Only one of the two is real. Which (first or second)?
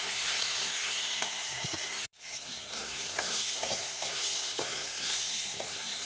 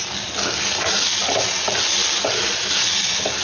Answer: second